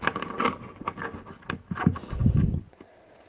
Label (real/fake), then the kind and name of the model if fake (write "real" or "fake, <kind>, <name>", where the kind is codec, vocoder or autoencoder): real